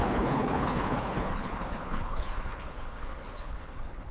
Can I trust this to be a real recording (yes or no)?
no